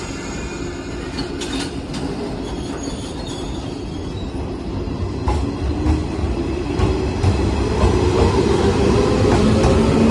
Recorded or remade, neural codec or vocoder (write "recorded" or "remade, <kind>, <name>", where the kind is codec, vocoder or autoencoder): recorded